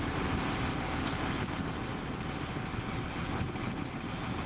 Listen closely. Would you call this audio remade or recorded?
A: remade